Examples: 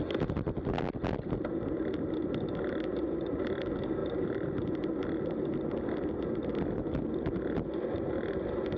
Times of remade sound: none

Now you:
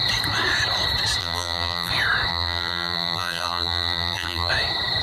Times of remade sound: 1.2-1.9; 2.3-4.5

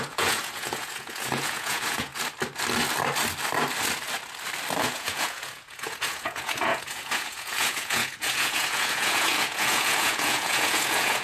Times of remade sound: 0.0-2.1; 4.8-11.2

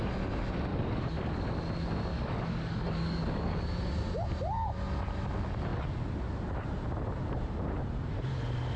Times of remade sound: 0.7-1.3; 2.1-3.6

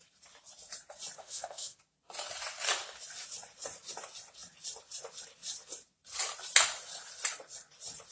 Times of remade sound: 1.2-1.8

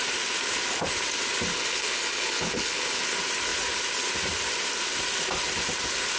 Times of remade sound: 1.5-3.0